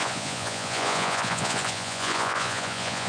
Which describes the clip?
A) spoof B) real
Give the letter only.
A